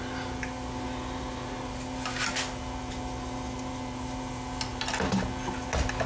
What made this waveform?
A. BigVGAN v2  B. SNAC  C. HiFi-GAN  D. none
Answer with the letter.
D